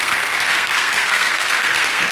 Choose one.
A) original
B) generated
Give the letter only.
B